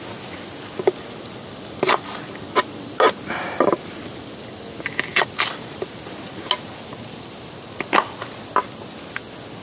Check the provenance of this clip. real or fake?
real